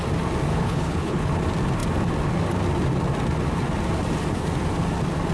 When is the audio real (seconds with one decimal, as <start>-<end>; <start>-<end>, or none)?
0.0-0.5; 1.4-5.3